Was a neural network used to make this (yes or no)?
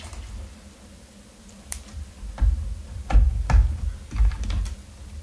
yes